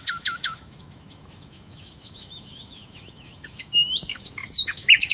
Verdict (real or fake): fake